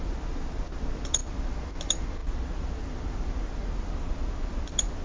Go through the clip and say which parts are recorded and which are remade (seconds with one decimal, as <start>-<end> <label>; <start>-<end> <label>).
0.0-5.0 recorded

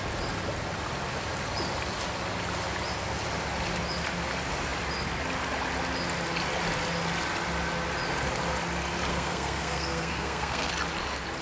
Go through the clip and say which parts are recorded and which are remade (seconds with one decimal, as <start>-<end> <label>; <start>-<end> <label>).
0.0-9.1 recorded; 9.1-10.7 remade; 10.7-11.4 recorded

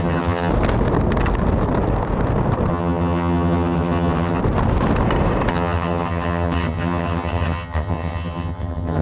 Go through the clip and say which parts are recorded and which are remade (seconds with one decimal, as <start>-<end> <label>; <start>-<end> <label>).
0.0-0.5 remade; 0.5-2.7 recorded; 2.7-4.4 remade; 4.4-5.5 recorded; 5.5-9.0 remade